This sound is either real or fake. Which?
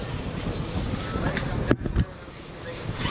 real